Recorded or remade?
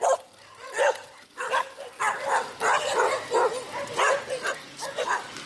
recorded